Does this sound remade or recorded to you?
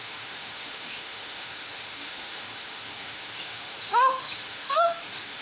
remade